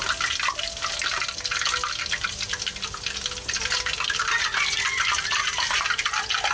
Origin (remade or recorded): recorded